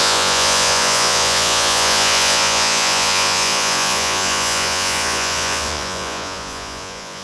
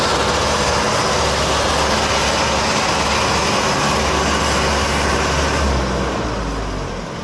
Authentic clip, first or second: second